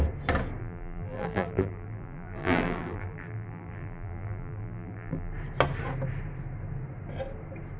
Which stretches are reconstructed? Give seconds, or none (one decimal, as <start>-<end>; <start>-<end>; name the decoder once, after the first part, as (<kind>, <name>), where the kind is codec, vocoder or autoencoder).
0.6-5.3 (vocoder, BigVGAN v2)